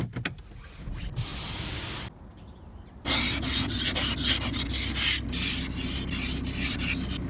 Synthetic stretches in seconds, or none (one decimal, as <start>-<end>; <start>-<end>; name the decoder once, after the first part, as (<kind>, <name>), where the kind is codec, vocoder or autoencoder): none